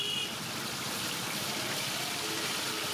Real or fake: fake